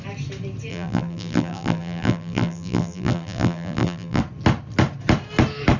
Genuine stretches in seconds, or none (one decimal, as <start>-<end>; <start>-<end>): 0.0-0.7; 4.2-5.8